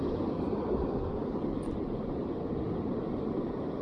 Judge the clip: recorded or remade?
recorded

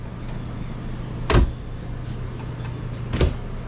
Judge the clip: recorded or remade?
recorded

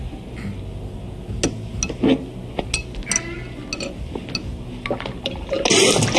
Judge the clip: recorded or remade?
recorded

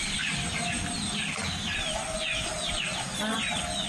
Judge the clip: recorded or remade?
recorded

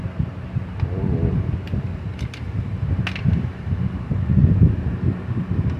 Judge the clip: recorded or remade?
recorded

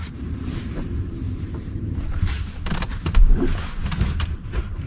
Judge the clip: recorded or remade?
remade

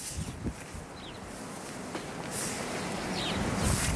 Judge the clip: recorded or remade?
recorded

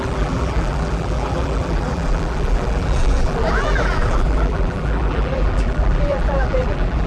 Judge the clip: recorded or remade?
remade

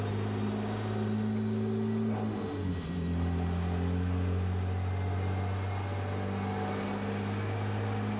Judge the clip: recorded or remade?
recorded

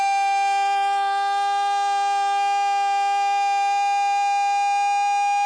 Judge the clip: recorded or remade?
recorded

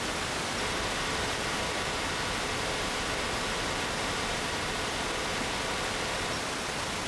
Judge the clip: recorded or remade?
remade